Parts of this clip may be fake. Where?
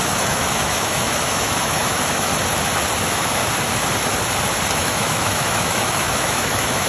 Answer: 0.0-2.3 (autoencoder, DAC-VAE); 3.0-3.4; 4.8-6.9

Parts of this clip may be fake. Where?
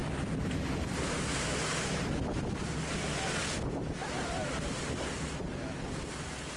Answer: none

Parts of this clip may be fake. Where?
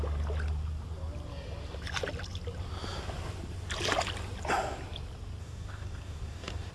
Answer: 5.4-6.7 (codec, DAC)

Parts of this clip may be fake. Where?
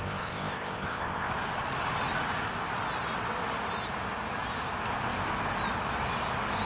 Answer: 0.0-1.3 (codec, ZipCodec)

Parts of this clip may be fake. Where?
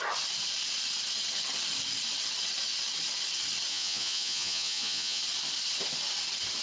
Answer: 3.7-5.2 (vocoder, Vocos)